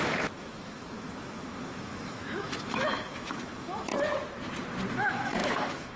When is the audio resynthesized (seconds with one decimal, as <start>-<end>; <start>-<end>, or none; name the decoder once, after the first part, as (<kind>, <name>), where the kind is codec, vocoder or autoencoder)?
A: 0.0-3.9 (autoencoder, DAC-VAE); 4.9-6.0